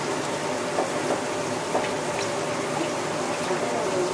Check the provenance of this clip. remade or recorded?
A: recorded